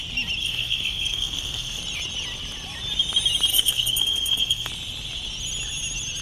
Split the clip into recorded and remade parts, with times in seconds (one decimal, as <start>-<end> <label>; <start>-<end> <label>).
0.0-0.4 recorded; 0.4-1.8 remade; 1.8-3.5 recorded; 3.5-4.7 remade; 4.7-6.2 recorded